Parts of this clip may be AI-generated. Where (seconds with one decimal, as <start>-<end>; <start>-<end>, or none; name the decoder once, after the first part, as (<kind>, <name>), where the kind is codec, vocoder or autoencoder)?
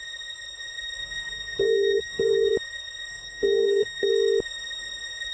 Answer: 1.0-2.5 (codec, SNAC); 3.1-4.1